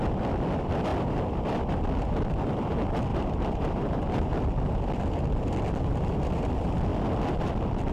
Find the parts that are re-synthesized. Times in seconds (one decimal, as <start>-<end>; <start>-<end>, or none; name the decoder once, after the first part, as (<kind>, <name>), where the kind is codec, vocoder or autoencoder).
3.1-4.4 (vocoder, BigVGAN v2)